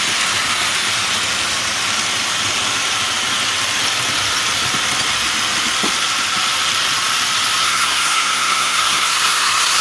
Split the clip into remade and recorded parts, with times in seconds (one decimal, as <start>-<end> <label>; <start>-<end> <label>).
0.0-7.6 recorded; 7.6-9.8 remade